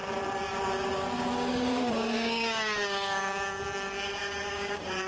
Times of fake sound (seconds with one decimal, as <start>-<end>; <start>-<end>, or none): 1.3-5.1